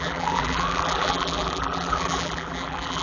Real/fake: fake